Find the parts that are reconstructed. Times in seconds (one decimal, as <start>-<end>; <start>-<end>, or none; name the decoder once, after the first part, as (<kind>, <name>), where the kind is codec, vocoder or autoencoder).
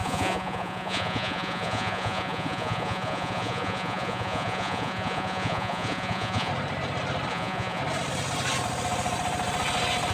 0.0-6.5 (vocoder, Vocos); 7.3-7.8